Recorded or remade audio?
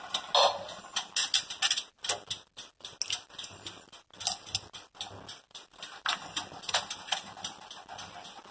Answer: recorded